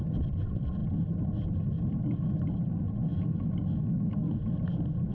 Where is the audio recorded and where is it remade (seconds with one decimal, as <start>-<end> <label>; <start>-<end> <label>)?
0.0-3.1 recorded; 3.1-4.2 remade; 4.2-5.1 recorded